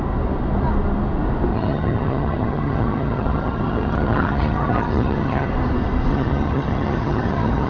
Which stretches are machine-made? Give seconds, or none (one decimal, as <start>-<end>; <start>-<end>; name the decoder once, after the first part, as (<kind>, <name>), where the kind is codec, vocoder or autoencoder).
1.5-5.5 (vocoder, HiFi-GAN); 6.1-7.7